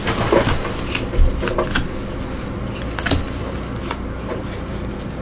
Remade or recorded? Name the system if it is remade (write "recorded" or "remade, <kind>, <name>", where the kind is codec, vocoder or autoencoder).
recorded